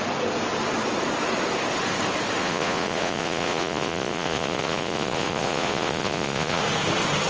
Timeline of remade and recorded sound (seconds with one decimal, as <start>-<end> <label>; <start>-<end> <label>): 0.0-2.4 recorded; 2.4-6.6 remade; 6.6-7.3 recorded

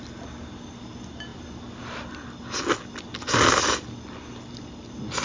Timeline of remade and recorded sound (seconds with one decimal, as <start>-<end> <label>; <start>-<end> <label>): 0.0-5.2 recorded

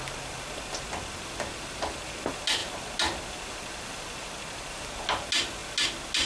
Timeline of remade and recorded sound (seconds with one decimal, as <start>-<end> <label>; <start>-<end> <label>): 0.0-6.3 recorded

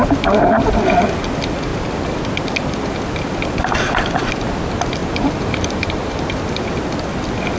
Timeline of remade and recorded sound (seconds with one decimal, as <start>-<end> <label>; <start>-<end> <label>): 0.0-5.0 recorded; 5.0-6.3 remade; 6.3-7.6 recorded

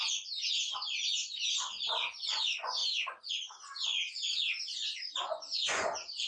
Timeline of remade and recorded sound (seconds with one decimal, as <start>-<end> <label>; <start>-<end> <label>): 0.0-6.3 remade

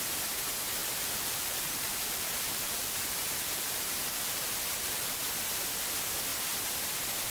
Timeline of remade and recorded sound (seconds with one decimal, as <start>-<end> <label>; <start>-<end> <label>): 0.0-0.8 recorded; 0.8-5.2 remade; 5.2-7.3 recorded